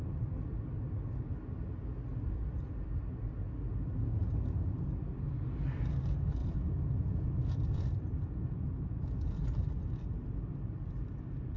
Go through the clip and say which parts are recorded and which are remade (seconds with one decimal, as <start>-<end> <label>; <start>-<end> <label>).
0.0-6.4 recorded; 6.4-9.5 remade; 9.5-11.6 recorded